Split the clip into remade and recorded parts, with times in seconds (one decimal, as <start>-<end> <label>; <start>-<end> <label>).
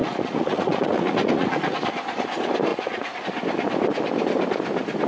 0.0-1.8 remade; 1.8-2.7 recorded; 2.7-3.2 remade; 3.2-5.1 recorded